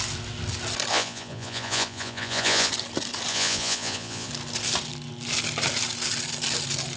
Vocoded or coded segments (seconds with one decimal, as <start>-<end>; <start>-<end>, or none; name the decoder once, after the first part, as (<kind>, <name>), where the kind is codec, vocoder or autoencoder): 0.9-2.7 (vocoder, Vocos); 3.3-4.3